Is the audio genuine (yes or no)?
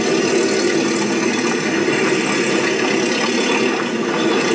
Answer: yes